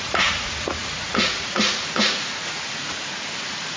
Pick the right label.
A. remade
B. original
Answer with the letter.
A